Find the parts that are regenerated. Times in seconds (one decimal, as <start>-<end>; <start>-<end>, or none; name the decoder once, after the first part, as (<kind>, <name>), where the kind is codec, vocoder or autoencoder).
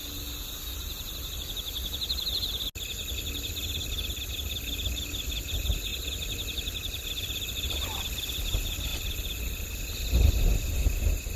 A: none